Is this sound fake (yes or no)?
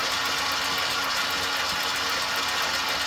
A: no